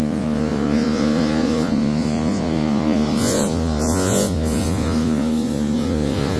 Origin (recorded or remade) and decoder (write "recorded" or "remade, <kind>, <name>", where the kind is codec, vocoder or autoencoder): remade, vocoder, Vocos